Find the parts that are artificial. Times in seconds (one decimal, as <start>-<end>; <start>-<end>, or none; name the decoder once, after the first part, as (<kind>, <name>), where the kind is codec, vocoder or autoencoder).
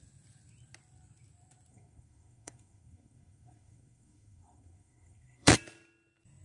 1.7-5.5 (codec, SNAC)